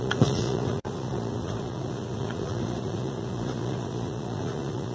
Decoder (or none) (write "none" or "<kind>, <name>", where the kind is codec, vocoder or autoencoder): vocoder, Vocos